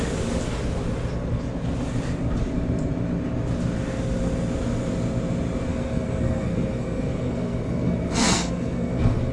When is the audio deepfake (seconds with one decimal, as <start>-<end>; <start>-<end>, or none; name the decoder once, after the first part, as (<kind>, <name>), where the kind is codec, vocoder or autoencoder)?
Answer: 5.7-9.3 (codec, SNAC)